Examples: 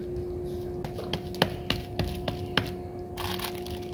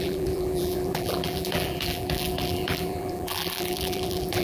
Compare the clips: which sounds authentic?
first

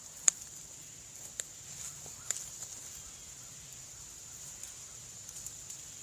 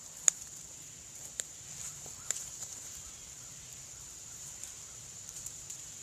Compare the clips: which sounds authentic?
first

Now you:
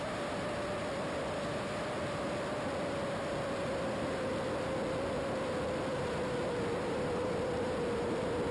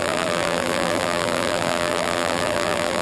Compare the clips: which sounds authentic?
first